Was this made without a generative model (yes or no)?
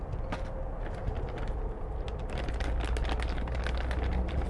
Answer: yes